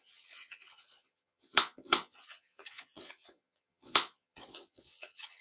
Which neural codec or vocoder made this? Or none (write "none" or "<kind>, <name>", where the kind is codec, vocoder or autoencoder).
vocoder, Vocos